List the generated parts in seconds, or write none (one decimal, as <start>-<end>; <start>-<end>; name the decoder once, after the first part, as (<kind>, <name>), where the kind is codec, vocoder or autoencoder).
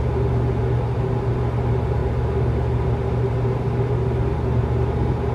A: none